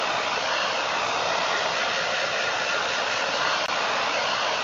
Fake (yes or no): no